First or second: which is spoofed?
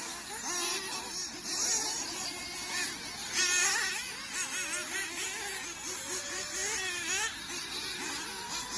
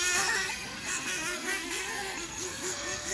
second